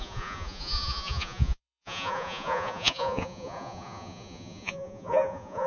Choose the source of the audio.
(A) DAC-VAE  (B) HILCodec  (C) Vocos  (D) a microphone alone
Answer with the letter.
C